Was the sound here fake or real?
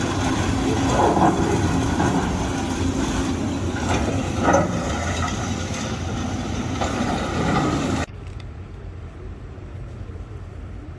fake